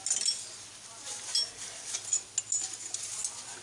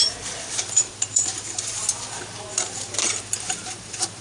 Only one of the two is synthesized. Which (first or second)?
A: second